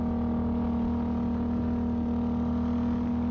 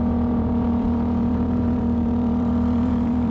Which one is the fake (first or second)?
second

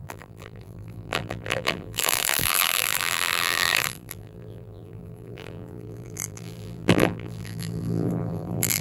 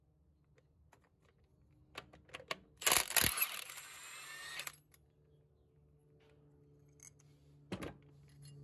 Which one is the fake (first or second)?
first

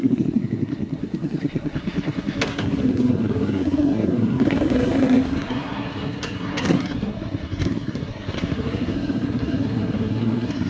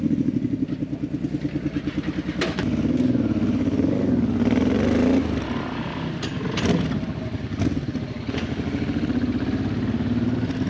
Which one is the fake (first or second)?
first